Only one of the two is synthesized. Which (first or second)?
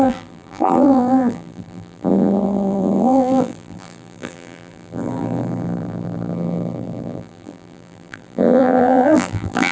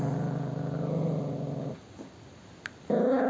first